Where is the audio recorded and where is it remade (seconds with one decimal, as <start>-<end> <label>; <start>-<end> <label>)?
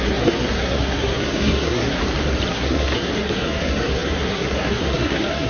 0.0-2.0 remade; 2.0-2.5 recorded; 2.5-5.5 remade